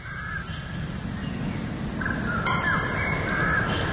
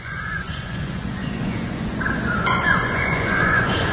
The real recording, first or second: first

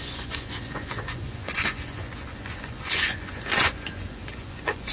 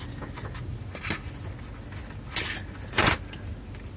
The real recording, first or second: second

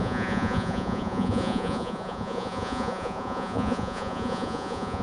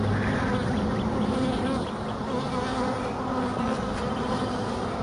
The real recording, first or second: second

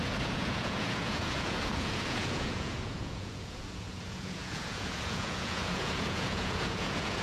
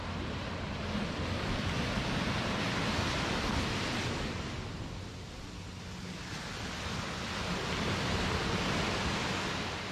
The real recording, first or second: second